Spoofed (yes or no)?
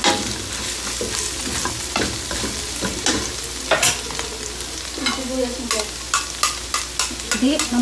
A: no